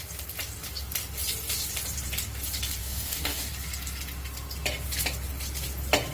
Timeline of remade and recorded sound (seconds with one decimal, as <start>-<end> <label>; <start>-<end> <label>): 0.0-2.8 recorded; 2.8-3.5 remade; 3.5-6.1 recorded